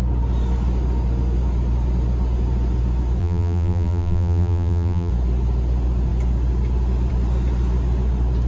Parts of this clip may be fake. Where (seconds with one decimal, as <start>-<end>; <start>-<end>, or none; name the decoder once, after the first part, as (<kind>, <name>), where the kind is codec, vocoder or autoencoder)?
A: 3.2-5.1 (vocoder, BigVGAN v2)